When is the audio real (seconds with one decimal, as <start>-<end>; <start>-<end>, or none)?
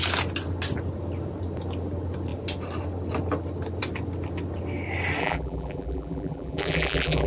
0.0-5.2